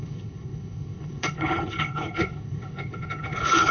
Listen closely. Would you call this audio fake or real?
fake